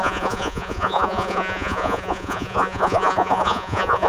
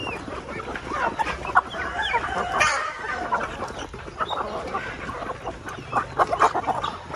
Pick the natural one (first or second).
second